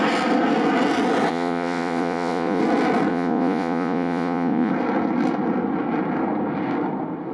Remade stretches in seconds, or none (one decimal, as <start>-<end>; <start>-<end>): 1.3-2.6; 3.1-4.7